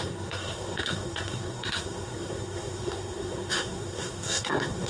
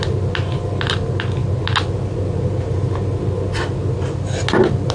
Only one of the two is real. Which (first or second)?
second